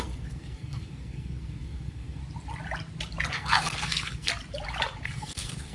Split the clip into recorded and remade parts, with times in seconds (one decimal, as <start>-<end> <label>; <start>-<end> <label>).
0.0-2.2 remade; 2.2-3.3 recorded; 3.3-4.3 remade; 4.3-5.0 recorded; 5.0-5.7 remade